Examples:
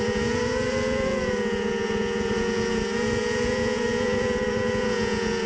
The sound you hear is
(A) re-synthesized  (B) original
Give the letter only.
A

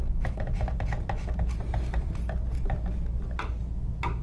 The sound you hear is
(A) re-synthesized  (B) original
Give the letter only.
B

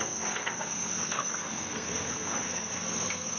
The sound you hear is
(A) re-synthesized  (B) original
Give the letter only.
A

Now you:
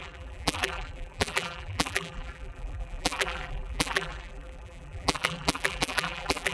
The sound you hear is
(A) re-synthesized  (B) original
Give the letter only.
A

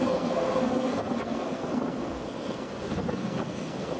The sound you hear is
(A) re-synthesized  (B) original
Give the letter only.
A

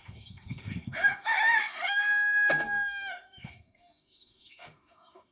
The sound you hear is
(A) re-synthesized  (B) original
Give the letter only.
A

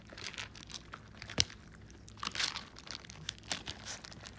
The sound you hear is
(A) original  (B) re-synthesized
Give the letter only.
A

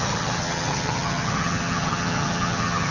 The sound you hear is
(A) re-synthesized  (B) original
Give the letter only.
A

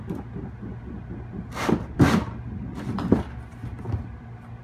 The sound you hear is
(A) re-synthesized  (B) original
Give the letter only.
B